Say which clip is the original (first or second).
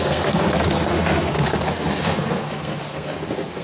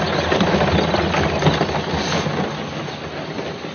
second